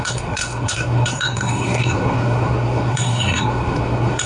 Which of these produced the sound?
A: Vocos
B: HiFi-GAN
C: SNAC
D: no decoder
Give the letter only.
C